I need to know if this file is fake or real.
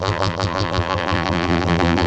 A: fake